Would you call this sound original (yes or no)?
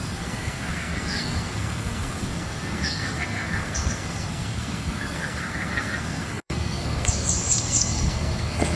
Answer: no